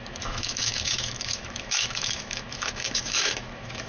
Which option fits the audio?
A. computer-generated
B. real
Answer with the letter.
A